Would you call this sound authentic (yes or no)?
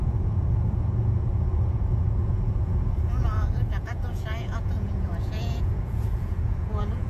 no